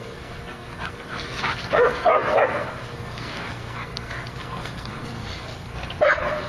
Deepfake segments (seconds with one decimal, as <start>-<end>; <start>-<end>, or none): 0.0-6.5